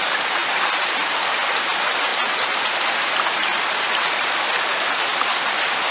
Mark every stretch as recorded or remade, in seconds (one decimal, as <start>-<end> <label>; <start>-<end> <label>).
0.0-0.4 recorded; 0.4-1.0 remade; 1.0-5.9 recorded